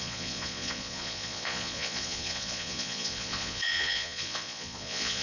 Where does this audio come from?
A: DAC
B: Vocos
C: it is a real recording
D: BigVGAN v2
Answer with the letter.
B